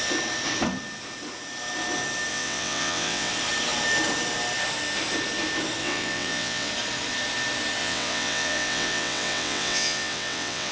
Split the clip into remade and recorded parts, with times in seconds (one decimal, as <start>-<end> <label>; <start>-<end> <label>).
0.0-2.3 recorded; 2.3-3.3 remade; 3.3-5.8 recorded; 5.8-6.7 remade; 6.7-7.8 recorded; 7.8-10.7 remade